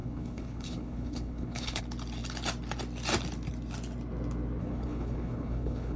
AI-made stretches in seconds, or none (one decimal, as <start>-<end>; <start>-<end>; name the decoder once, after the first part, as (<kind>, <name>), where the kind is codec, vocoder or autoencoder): 0.0-1.8 (codec, HILCodec); 4.6-6.0

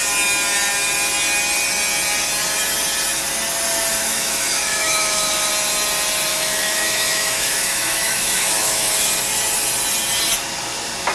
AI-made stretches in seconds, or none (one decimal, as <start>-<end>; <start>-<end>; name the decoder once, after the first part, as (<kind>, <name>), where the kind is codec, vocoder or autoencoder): 4.0-5.5 (autoencoder, DAC-VAE); 6.3-8.9